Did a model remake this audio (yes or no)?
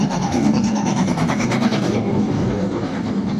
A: yes